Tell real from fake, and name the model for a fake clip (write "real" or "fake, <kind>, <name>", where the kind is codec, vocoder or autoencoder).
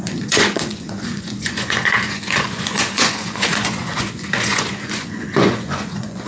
fake, vocoder, Vocos